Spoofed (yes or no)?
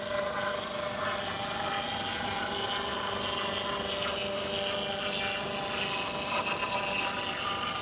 no